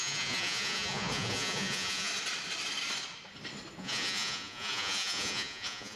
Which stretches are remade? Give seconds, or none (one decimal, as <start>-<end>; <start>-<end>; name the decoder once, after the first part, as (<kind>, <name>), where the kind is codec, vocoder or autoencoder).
0.0-2.1 (vocoder, Vocos); 3.8-6.0

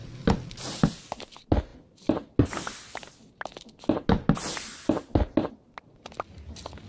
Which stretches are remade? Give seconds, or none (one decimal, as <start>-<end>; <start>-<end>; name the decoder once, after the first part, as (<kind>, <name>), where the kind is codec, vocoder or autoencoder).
none